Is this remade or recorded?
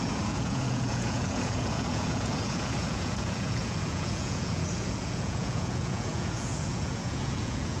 remade